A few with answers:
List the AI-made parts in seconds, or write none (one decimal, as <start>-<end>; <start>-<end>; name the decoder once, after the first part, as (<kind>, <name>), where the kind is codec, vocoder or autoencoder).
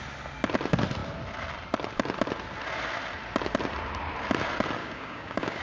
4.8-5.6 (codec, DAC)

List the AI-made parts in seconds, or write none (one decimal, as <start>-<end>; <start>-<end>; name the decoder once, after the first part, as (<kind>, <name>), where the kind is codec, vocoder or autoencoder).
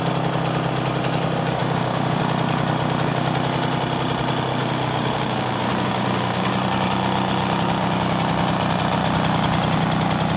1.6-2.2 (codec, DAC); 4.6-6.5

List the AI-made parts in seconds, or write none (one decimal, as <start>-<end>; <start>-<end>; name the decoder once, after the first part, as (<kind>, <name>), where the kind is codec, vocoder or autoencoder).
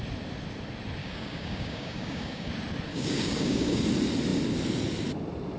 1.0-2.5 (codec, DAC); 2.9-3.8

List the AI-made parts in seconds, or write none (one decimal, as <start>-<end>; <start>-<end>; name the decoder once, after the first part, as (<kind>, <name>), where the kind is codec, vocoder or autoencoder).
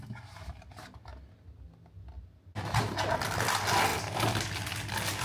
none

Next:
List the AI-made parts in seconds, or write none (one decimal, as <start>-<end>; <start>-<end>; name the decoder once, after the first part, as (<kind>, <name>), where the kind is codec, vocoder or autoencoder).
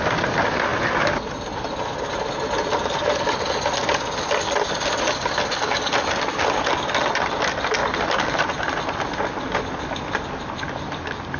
none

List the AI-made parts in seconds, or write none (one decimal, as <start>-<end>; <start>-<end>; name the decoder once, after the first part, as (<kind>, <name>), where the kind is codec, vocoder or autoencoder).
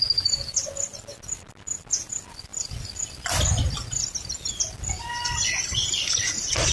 none